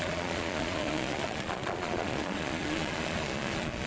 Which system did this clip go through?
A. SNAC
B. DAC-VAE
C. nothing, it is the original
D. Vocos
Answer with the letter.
D